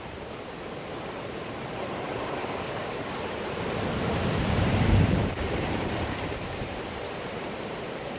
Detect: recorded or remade remade